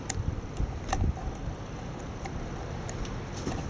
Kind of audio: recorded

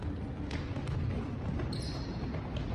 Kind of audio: recorded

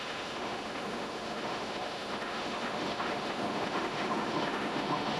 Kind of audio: remade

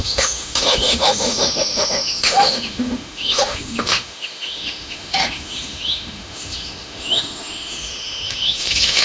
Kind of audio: remade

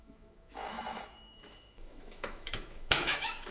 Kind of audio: remade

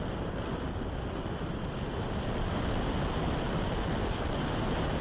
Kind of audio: recorded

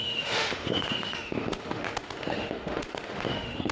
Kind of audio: remade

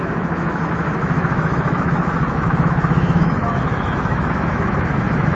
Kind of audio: remade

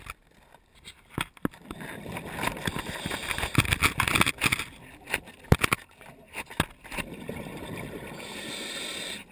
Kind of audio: recorded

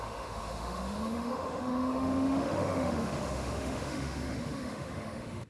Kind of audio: remade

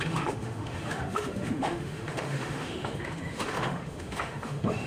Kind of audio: remade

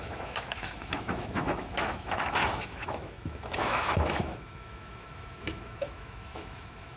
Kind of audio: remade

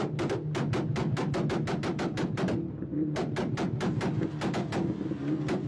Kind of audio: recorded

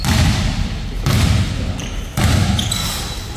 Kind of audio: recorded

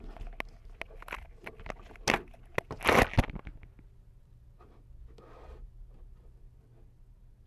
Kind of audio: recorded